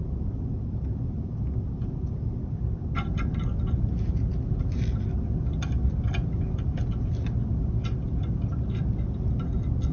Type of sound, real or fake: real